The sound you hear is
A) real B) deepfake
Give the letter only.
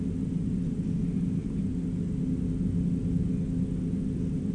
A